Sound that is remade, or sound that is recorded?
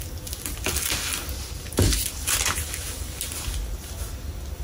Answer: recorded